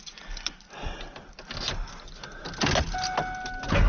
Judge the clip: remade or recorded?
recorded